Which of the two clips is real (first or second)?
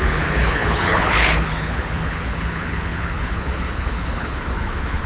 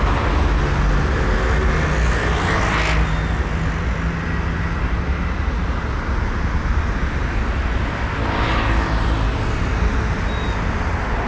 second